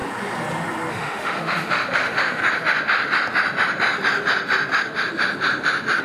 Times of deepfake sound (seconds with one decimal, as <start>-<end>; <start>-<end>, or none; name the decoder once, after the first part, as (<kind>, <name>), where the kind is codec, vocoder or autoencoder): 0.9-2.4 (autoencoder, DAC-VAE)